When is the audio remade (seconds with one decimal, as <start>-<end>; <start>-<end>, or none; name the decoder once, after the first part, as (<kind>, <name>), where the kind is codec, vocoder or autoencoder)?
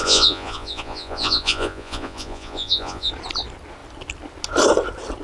0.0-3.1 (vocoder, Vocos)